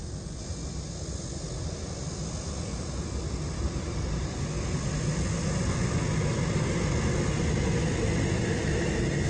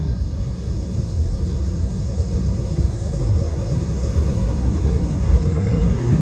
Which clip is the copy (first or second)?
second